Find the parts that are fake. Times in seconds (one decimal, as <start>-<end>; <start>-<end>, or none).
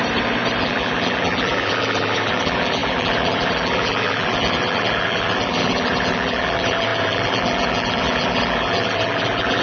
0.6-9.6